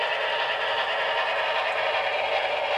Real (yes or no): yes